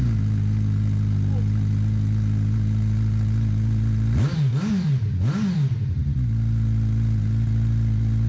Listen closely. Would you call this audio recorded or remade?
recorded